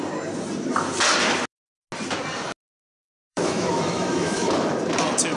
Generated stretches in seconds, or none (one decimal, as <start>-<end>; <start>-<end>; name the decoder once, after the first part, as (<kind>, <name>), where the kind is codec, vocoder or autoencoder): 3.3-4.8 (autoencoder, DAC-VAE)